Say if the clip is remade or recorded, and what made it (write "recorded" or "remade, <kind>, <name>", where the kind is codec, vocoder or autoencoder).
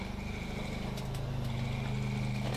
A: recorded